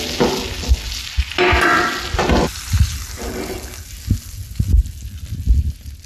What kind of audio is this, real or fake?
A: real